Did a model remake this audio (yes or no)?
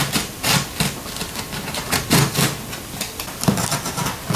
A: no